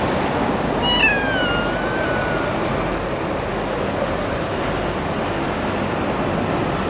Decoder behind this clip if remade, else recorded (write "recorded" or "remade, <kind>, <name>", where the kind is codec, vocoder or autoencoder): recorded